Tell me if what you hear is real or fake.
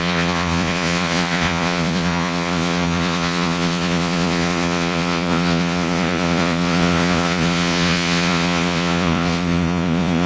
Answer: fake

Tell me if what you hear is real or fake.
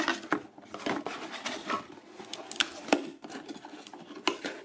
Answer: real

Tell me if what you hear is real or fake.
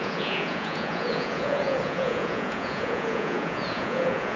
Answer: fake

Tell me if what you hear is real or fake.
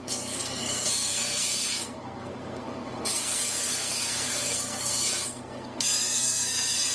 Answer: fake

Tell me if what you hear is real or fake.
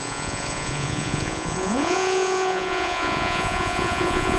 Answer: fake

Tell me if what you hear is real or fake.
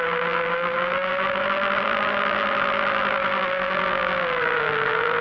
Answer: fake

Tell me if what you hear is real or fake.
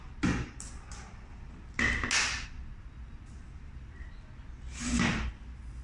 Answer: real